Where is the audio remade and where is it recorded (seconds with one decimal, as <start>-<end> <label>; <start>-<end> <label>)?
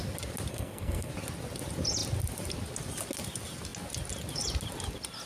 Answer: 0.0-0.5 recorded; 0.5-1.1 remade; 1.1-5.3 recorded